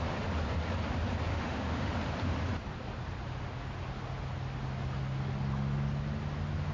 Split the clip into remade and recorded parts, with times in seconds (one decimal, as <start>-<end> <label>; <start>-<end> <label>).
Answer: 0.0-1.3 recorded; 1.3-1.9 remade; 1.9-6.7 recorded